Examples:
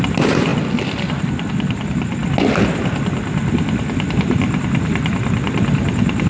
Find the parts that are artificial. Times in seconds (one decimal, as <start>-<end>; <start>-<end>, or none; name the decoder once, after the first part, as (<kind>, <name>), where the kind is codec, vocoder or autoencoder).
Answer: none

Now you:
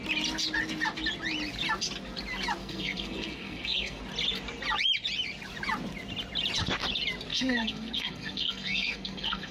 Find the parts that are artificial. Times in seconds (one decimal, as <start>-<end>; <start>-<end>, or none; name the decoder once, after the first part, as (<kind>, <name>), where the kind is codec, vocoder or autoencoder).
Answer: 2.6-4.0 (codec, SNAC); 7.3-9.5

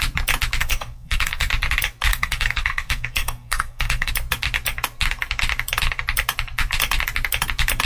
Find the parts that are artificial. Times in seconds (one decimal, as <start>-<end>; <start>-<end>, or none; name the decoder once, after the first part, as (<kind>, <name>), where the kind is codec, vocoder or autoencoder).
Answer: 0.6-1.5 (codec, SNAC); 2.1-4.1

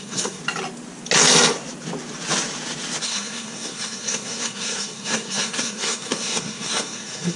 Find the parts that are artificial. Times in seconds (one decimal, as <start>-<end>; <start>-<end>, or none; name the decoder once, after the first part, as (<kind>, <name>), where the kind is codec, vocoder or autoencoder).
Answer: 0.0-0.4 (codec, SNAC); 3.0-7.4